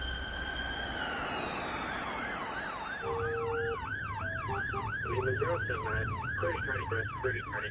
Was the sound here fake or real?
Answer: real